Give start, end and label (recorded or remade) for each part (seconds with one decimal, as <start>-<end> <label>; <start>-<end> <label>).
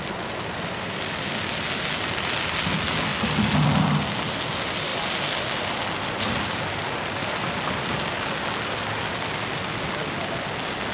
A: 0.0-10.9 recorded